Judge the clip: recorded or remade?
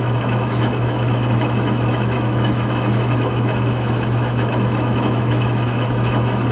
remade